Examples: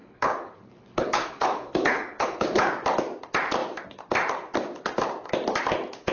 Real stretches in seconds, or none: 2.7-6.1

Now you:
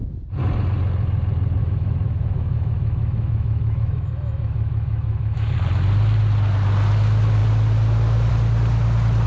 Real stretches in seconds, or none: 0.0-1.6; 5.5-9.3

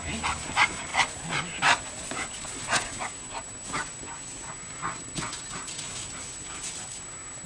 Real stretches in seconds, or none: 0.0-7.5

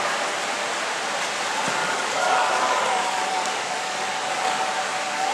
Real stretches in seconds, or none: 0.0-1.8

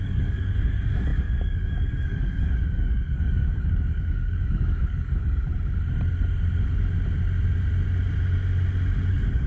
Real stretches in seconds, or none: 5.5-9.1

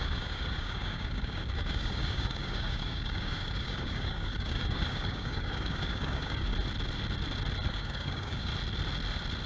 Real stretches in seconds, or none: 6.5-7.7; 8.5-9.5

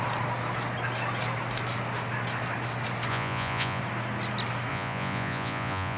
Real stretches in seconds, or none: 0.0-3.1; 3.8-4.7

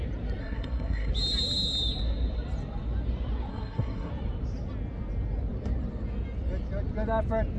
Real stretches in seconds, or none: 0.0-0.4; 1.1-3.5; 4.1-7.6